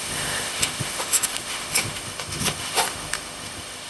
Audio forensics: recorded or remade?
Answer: remade